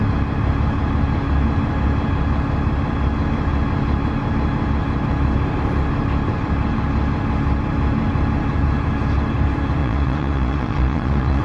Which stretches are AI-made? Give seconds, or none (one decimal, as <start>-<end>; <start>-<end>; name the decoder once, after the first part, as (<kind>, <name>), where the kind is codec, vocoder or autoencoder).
9.8-11.4 (vocoder, Vocos)